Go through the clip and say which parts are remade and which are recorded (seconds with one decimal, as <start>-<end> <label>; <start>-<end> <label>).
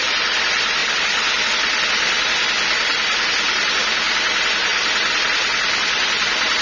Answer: 0.0-6.6 recorded